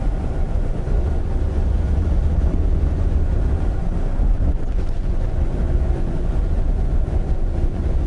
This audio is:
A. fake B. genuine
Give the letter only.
A